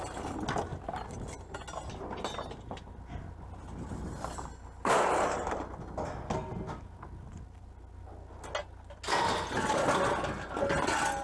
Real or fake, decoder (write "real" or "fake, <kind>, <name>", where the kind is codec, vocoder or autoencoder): real